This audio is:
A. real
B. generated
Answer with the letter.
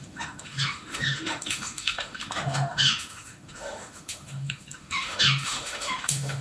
B